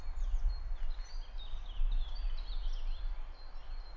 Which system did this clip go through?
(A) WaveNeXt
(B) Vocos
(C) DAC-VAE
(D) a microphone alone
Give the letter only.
D